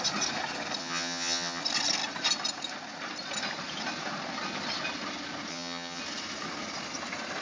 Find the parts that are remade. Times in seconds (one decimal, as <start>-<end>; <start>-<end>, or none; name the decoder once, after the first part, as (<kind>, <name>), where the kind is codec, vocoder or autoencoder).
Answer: 0.8-1.6 (vocoder, HiFi-GAN); 5.5-6.0